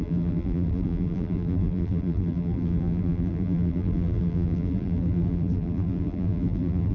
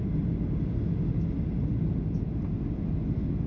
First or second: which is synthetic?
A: first